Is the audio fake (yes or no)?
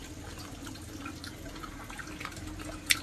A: no